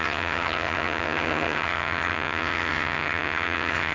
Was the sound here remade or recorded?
remade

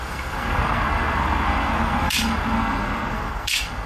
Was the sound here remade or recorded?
remade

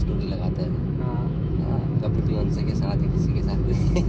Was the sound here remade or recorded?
remade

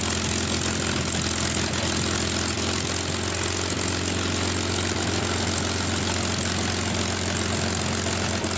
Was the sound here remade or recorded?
recorded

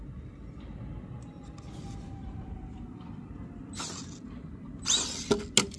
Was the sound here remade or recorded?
recorded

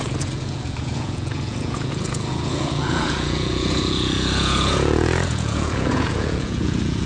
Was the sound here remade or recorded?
remade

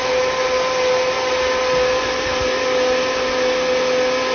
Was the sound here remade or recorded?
recorded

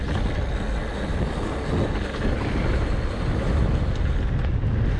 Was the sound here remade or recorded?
recorded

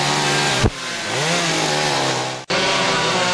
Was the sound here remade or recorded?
recorded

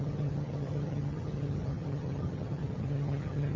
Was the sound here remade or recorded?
remade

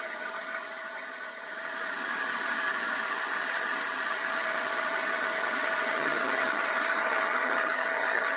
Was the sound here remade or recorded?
remade